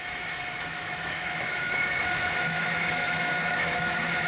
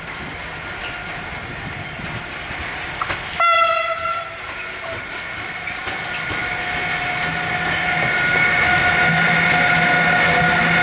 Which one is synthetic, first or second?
first